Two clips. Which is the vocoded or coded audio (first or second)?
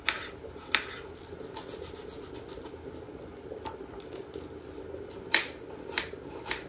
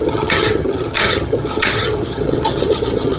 second